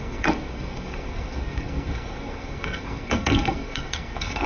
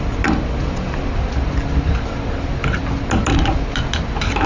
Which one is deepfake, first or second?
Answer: first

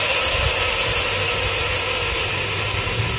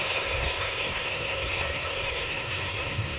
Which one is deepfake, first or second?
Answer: second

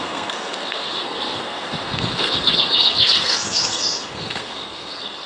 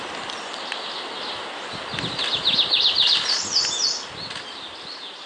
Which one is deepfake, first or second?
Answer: first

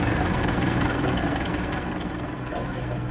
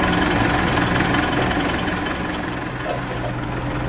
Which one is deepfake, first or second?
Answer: first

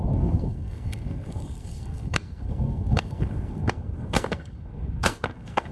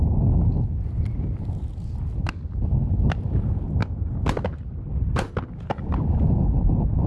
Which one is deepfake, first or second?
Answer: first